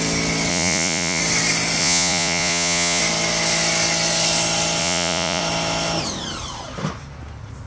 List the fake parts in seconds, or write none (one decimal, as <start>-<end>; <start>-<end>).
0.5-1.2; 1.8-3.0; 4.8-5.4